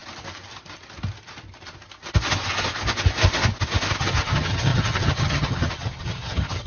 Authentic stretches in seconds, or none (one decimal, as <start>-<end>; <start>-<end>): 0.0-4.0